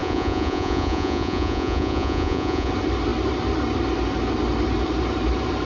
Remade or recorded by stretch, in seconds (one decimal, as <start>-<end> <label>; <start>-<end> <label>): 0.0-2.7 remade; 2.7-5.6 recorded